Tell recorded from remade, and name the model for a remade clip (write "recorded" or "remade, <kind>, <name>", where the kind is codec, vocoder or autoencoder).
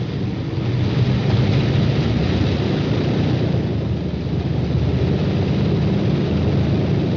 recorded